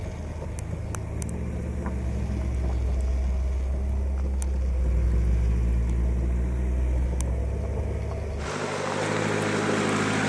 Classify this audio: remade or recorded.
recorded